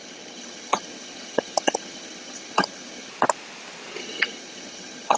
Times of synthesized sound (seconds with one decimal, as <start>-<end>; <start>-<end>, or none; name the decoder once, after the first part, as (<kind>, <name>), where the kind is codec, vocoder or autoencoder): 0.0-3.1 (vocoder, HiFi-GAN); 4.0-5.2